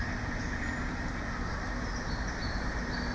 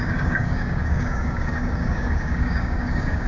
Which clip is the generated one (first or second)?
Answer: second